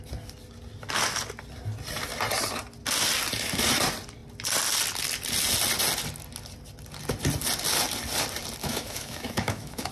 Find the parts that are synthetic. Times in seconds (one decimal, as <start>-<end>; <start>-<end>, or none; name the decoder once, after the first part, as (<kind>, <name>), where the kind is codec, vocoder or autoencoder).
8.6-9.9 (autoencoder, DAC-VAE)